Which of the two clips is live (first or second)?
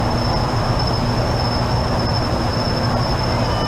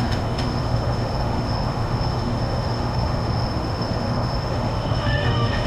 first